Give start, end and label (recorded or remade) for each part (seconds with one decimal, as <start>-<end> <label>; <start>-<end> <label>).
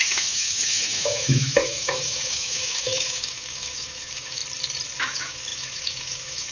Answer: 0.0-4.4 remade; 4.4-5.0 recorded; 5.0-6.5 remade